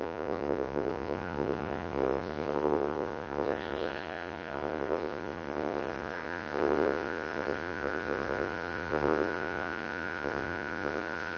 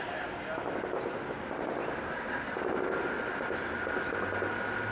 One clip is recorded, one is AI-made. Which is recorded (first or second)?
second